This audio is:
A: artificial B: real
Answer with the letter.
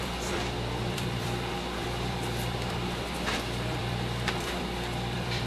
A